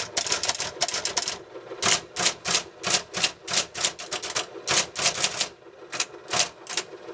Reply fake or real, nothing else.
real